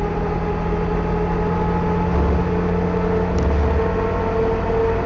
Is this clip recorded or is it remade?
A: recorded